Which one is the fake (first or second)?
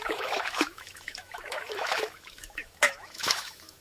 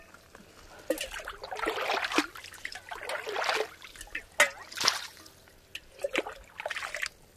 first